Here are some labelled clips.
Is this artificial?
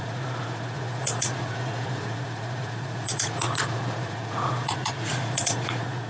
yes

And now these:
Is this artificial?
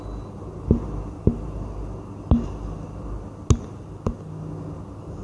no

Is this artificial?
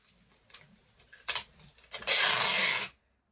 no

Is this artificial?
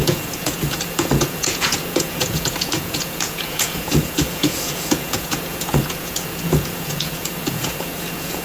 yes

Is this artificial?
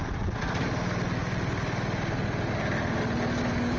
no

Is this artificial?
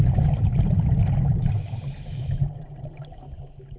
no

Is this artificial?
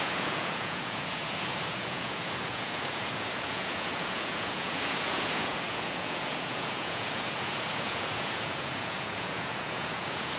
yes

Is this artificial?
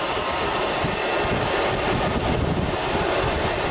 no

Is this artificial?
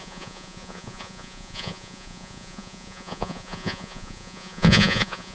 yes